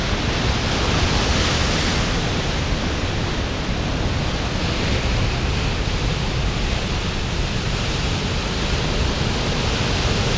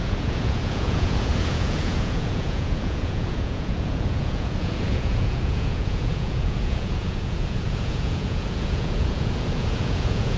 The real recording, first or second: first